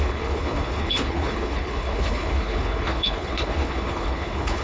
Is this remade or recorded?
remade